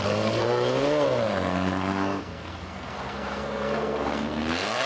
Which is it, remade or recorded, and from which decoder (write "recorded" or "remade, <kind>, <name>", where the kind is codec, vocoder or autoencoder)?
remade, codec, SNAC